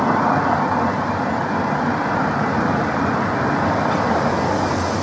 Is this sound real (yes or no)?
no